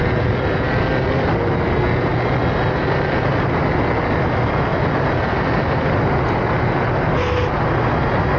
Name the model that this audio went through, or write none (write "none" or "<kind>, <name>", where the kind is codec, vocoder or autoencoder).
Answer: none